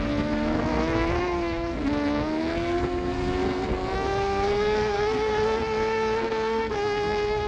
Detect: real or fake fake